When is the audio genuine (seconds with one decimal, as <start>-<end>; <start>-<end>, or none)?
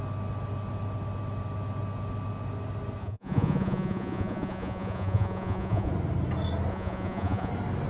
0.0-3.0; 5.9-6.7; 7.5-7.9